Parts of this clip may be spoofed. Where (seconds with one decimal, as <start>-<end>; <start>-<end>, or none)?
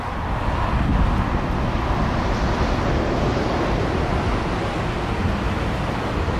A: none